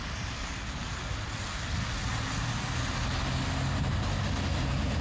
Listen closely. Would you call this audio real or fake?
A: real